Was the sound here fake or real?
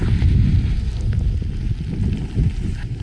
real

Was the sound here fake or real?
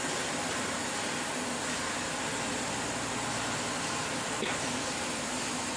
real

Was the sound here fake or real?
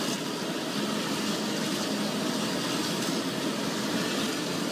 real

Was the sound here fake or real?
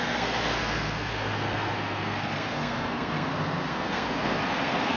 fake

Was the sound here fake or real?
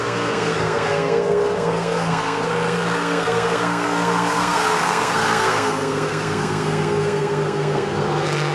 fake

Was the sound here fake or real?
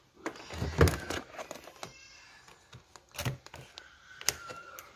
real